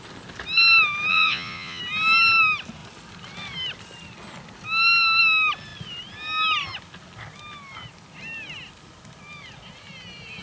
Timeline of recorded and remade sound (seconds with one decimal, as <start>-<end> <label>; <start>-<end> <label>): 0.0-1.1 recorded; 1.1-1.8 remade; 1.8-10.4 recorded